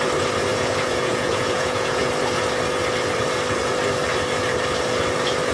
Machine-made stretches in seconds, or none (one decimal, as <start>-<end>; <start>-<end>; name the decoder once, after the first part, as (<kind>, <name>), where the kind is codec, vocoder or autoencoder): 0.5-2.1 (vocoder, Vocos)